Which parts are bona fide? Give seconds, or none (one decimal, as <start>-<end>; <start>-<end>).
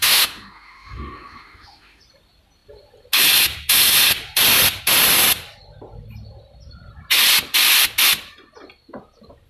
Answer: 2.0-9.5